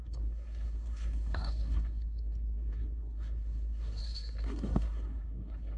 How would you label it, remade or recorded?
remade